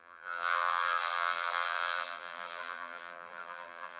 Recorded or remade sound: remade